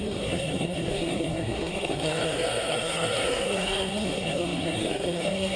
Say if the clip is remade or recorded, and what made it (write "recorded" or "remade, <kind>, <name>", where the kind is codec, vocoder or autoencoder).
remade, codec, SNAC